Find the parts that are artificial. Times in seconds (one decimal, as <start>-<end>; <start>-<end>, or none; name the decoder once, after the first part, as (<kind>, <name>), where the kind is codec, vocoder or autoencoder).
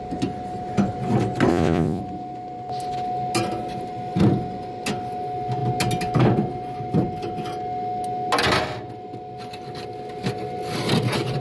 1.5-2.0 (vocoder, Vocos)